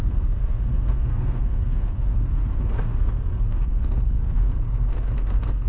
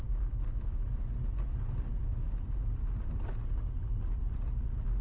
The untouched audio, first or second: second